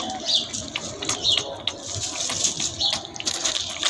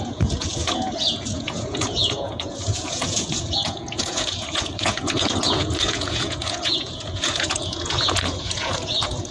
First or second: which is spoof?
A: second